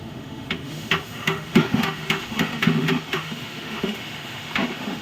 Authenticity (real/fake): fake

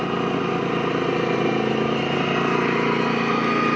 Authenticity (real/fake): real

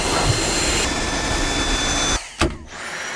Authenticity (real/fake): real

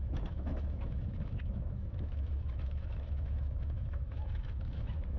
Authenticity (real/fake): fake